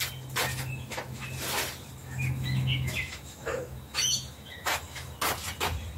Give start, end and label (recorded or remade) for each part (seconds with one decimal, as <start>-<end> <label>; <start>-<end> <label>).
0.0-0.5 recorded; 0.5-1.2 remade; 1.2-2.0 recorded; 2.0-5.2 remade; 5.2-6.0 recorded